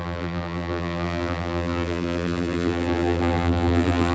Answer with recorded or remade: remade